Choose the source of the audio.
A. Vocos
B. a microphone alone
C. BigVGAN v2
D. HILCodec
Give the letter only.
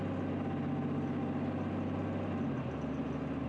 B